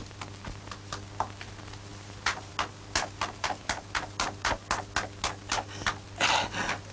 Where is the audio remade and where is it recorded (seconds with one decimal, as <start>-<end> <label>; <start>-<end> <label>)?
0.0-1.9 recorded; 1.9-2.5 remade; 2.5-6.9 recorded